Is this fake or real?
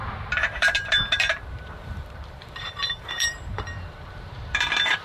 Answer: fake